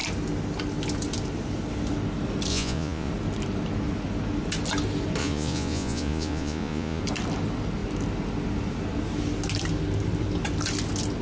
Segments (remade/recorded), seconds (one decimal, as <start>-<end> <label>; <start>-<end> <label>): 0.0-2.5 recorded; 2.5-3.1 remade; 3.1-5.2 recorded; 5.2-7.0 remade; 7.0-11.2 recorded